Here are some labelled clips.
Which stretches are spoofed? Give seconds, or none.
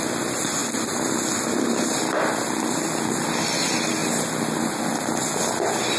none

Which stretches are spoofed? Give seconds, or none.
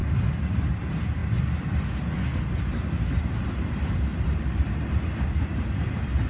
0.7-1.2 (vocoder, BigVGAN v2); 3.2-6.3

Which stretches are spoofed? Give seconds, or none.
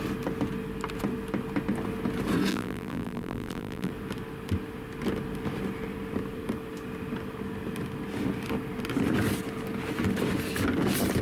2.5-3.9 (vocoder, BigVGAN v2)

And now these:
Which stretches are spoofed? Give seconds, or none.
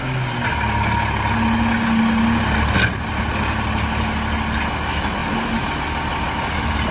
5.2-5.8 (vocoder, BigVGAN v2)